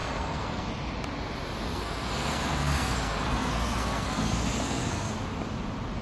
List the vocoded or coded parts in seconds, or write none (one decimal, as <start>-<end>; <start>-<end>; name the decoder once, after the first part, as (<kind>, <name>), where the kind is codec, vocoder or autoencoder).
0.0-0.7 (codec, SNAC); 1.7-5.1